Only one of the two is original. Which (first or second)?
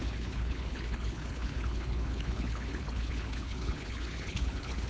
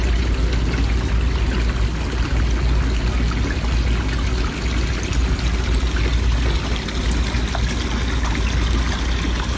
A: second